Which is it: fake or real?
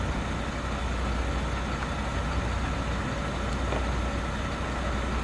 real